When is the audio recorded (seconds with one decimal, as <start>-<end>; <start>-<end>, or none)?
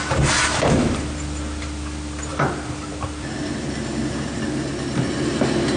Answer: 0.0-5.8